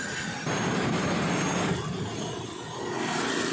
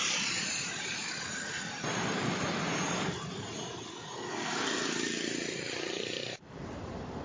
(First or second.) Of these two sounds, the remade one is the second